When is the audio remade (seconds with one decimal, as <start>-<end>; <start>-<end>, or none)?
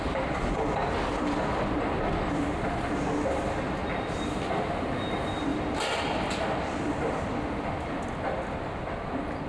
3.8-4.4; 5.5-8.0